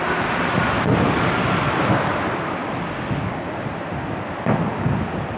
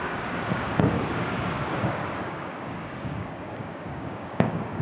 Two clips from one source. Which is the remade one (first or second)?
second